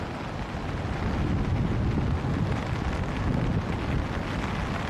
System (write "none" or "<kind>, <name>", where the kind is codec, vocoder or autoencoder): none